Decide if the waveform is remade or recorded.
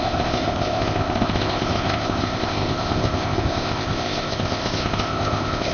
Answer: remade